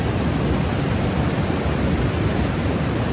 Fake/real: fake